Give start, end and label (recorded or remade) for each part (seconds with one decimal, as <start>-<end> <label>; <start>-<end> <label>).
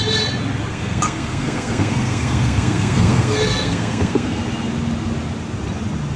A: 0.0-0.7 recorded; 0.7-4.4 remade; 4.4-6.2 recorded